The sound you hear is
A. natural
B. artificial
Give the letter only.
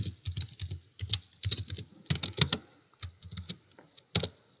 A